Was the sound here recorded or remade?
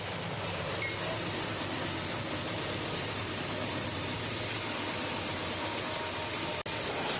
recorded